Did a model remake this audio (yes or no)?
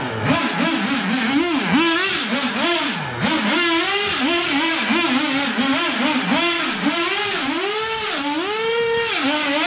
no